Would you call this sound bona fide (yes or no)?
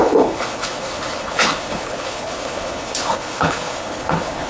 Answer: no